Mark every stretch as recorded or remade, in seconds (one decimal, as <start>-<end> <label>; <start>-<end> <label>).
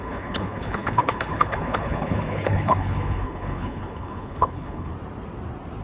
0.0-4.9 remade; 4.9-5.8 recorded